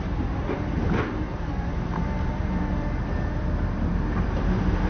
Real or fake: fake